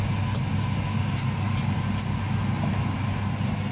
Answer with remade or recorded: recorded